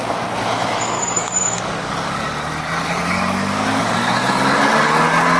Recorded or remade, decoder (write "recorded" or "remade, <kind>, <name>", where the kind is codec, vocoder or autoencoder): remade, codec, DAC